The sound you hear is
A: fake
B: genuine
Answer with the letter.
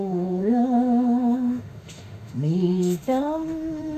A